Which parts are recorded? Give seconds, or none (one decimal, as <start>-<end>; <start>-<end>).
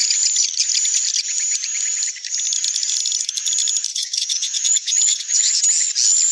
0.0-3.9; 5.6-6.3